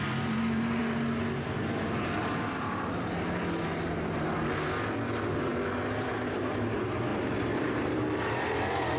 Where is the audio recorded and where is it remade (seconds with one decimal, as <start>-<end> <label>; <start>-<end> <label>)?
0.0-0.8 remade; 0.8-6.0 recorded; 6.0-9.0 remade